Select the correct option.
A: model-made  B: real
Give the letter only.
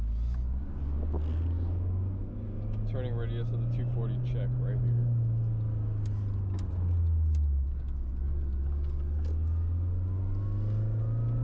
B